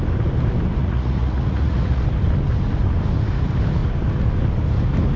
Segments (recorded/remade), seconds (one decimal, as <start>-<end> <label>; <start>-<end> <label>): 0.0-0.8 recorded; 0.8-2.0 remade; 2.0-5.2 recorded